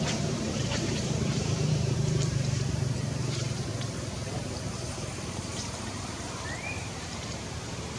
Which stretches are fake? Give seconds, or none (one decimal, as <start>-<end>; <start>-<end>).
0.0-3.7; 4.7-8.0